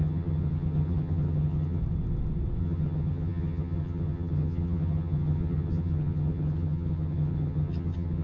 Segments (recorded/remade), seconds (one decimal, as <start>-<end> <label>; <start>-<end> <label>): 0.0-1.8 remade; 1.8-2.6 recorded; 2.6-8.2 remade